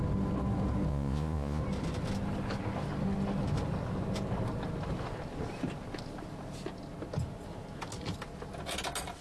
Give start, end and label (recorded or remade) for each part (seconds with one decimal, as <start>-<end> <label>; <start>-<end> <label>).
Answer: 0.0-0.9 recorded; 0.9-1.6 remade; 1.6-9.2 recorded